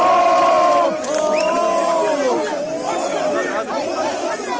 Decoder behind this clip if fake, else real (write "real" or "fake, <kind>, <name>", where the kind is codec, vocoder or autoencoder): real